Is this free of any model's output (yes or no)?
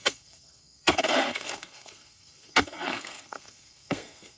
no